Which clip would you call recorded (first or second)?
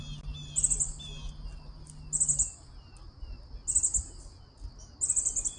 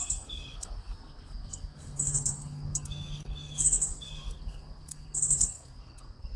first